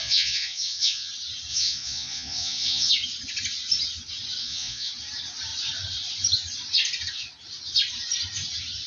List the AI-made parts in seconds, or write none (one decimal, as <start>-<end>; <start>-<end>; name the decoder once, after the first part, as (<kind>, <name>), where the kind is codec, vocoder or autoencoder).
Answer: 0.0-1.1 (vocoder, Vocos); 1.5-2.9; 4.4-4.9